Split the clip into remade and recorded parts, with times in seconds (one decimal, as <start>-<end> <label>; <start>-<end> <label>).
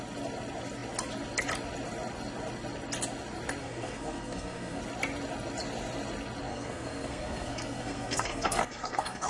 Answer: 0.0-3.6 recorded; 3.6-4.8 remade; 4.8-6.5 recorded; 6.5-9.3 remade